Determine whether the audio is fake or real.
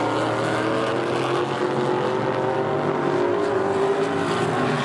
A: real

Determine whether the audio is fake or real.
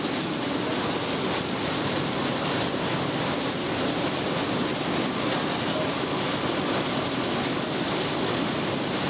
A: real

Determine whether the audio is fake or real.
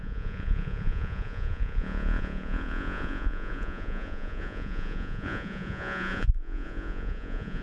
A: fake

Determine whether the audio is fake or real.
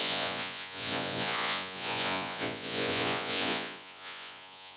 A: fake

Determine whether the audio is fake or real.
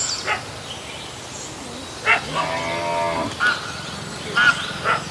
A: real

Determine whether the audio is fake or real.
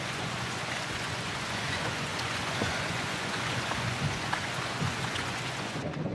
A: fake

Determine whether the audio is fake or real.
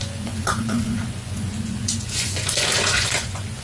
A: fake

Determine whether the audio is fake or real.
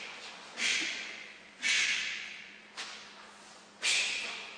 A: fake